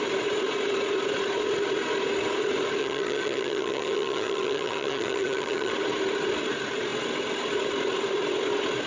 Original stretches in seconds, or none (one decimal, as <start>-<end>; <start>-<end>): 0.0-2.8; 5.7-8.9

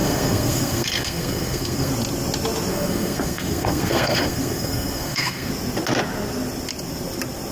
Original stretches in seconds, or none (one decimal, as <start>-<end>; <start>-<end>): 1.9-2.7; 5.5-7.5